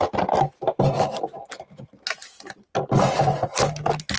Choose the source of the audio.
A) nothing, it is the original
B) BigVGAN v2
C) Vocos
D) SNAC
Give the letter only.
A